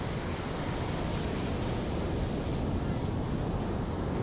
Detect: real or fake real